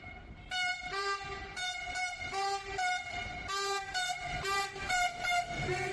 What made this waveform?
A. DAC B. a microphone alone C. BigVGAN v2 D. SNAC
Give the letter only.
C